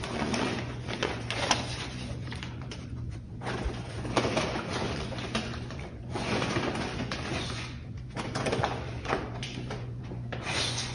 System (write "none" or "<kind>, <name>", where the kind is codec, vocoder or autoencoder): vocoder, Vocos